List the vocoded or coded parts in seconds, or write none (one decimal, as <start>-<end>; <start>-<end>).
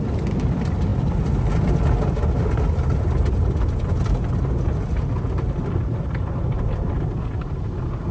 none